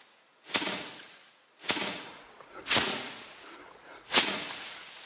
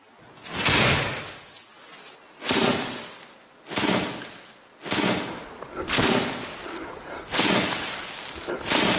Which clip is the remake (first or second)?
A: first